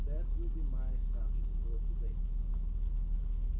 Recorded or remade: recorded